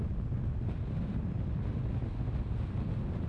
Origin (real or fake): real